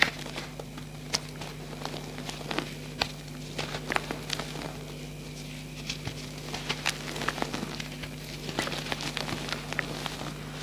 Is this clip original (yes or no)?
yes